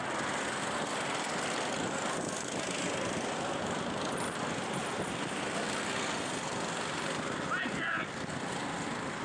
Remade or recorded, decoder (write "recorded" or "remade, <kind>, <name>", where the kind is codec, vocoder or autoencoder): recorded